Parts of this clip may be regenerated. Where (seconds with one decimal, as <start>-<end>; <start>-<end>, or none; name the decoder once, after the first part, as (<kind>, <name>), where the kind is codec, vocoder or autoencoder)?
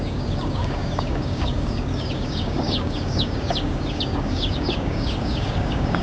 0.0-6.0 (codec, DAC)